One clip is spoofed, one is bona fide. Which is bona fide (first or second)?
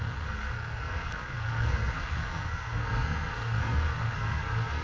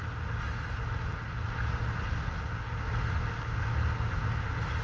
second